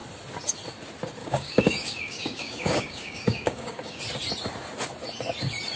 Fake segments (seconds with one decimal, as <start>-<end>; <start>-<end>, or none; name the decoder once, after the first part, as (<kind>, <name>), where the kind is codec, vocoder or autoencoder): 1.2-4.0 (codec, DAC)